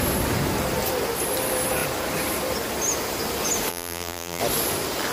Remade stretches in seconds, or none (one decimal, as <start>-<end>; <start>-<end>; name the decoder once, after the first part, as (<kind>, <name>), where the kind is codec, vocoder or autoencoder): 3.7-4.4 (vocoder, BigVGAN v2)